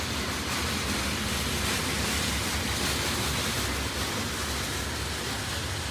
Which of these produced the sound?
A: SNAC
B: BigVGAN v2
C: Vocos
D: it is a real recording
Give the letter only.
D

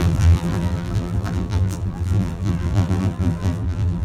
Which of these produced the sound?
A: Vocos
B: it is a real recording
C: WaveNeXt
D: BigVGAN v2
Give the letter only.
D